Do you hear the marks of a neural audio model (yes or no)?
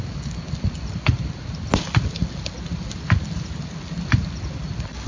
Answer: no